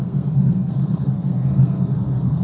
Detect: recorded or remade remade